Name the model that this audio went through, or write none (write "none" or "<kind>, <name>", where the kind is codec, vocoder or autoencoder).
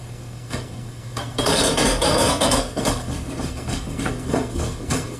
codec, SNAC